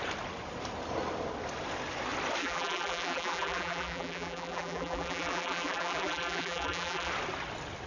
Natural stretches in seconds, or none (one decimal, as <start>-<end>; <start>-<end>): 0.0-2.4; 7.1-7.9